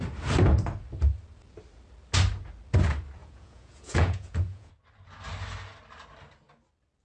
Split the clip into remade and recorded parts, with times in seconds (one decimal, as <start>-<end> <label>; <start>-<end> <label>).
0.0-3.2 recorded; 3.2-4.7 remade; 4.7-7.0 recorded